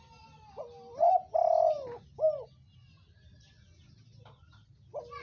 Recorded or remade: recorded